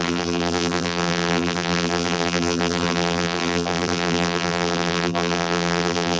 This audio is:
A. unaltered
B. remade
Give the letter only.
B